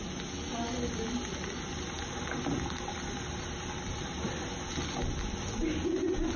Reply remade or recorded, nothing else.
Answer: recorded